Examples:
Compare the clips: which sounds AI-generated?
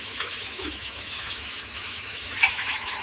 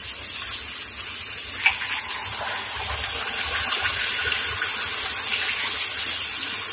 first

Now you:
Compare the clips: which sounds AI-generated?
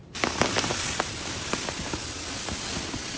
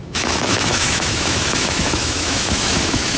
second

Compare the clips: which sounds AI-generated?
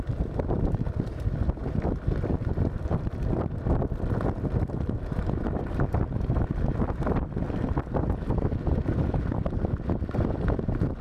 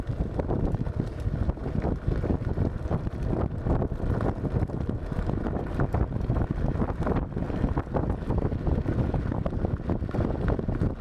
first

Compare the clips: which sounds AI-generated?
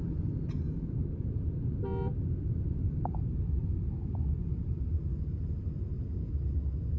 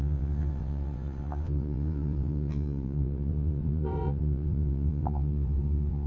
second